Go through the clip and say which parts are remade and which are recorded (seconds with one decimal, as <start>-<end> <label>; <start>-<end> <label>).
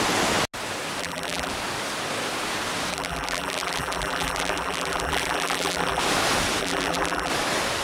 0.0-1.0 recorded; 1.0-1.5 remade; 1.5-2.9 recorded; 2.9-6.0 remade; 6.0-6.6 recorded; 6.6-7.3 remade; 7.3-7.8 recorded